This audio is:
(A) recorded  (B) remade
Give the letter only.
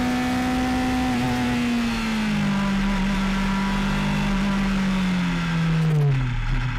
A